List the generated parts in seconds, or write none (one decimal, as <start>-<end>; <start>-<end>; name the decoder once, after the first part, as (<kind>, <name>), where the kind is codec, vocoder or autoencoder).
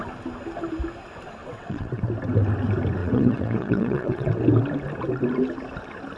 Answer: 1.4-2.0 (vocoder, WaveNeXt); 3.0-4.3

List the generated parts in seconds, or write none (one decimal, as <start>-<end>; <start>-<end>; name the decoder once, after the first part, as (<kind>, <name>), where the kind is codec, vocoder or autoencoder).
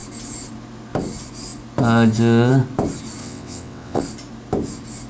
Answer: 3.2-4.0 (vocoder, WaveNeXt)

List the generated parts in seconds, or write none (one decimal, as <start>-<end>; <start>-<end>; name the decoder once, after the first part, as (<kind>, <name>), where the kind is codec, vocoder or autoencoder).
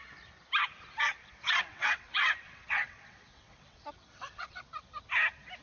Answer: 1.2-4.6 (vocoder, WaveNeXt)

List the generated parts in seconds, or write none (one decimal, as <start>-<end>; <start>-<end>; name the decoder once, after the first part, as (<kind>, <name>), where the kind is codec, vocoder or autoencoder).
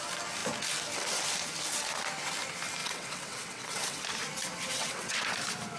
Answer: 2.8-4.0 (vocoder, WaveNeXt); 4.7-5.2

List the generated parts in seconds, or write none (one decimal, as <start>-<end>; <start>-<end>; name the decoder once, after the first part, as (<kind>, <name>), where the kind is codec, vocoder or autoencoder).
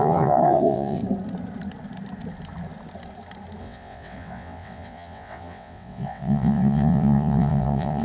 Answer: 0.0-1.0 (vocoder, WaveNeXt); 3.6-8.0